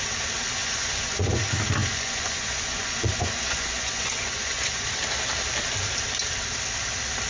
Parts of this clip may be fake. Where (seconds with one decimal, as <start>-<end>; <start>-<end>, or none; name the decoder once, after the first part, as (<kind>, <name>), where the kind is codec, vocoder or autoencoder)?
0.6-1.4 (vocoder, Vocos); 1.8-4.9